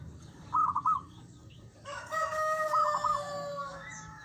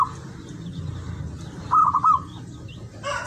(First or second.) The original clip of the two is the second